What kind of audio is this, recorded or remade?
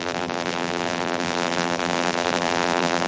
remade